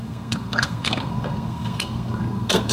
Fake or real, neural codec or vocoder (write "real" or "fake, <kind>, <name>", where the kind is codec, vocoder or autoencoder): fake, codec, SNAC